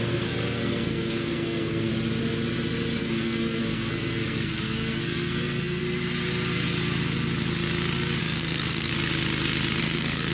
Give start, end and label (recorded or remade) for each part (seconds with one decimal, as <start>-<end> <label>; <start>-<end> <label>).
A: 0.0-1.9 remade; 1.9-3.0 recorded; 3.0-5.8 remade; 5.8-8.2 recorded; 8.2-8.9 remade; 8.9-9.8 recorded; 9.8-10.3 remade

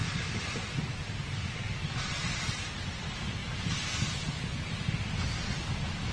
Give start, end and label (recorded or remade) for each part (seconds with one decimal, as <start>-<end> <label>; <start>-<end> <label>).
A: 0.0-2.5 remade; 2.5-6.1 recorded